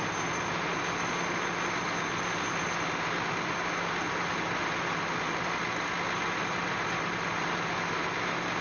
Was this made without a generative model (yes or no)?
yes